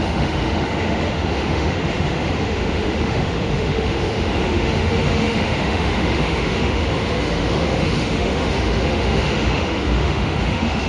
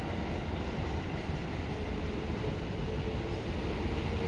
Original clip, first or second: second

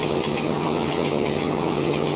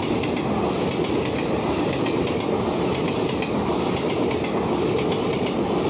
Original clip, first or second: second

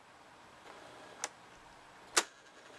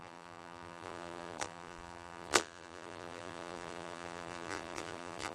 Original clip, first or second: first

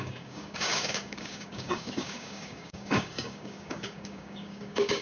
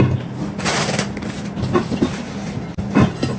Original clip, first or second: second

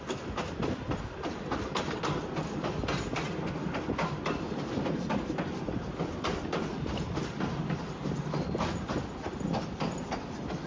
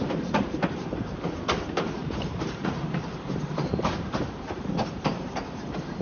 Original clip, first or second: first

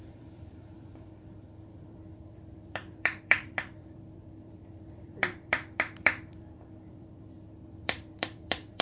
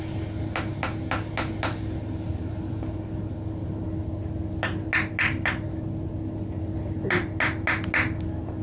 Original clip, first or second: second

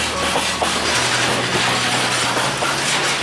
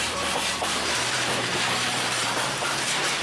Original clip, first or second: first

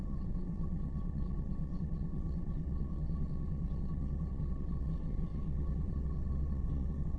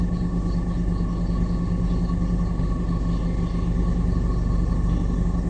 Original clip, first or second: second